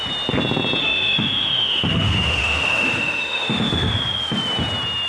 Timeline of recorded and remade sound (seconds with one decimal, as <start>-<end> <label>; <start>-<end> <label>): 0.0-0.8 recorded; 0.8-3.9 remade; 3.9-5.1 recorded